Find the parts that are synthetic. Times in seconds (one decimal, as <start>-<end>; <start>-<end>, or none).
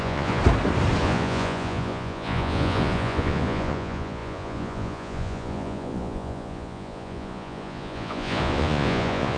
0.0-0.4; 1.0-9.4